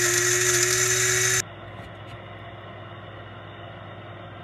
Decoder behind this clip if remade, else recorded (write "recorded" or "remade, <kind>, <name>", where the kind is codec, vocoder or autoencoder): recorded